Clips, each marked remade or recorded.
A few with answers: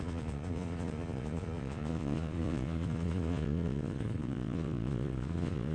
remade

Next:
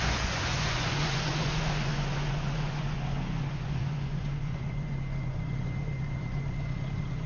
remade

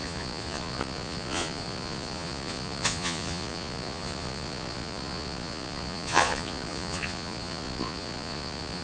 remade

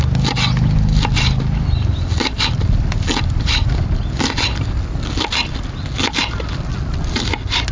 recorded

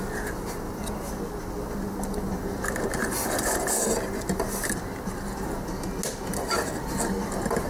recorded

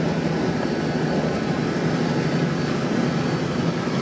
recorded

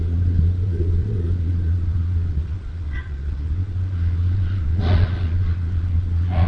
remade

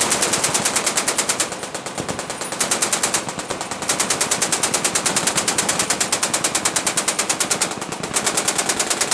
recorded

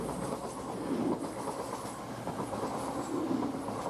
recorded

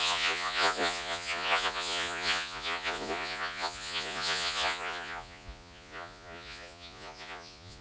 remade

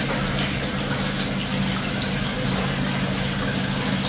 recorded